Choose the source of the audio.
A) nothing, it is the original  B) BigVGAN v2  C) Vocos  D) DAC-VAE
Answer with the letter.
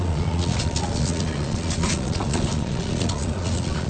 C